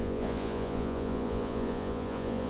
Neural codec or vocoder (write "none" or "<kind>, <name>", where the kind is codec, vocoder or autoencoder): vocoder, Vocos